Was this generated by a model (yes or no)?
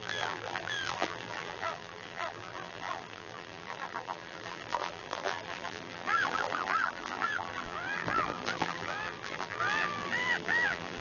yes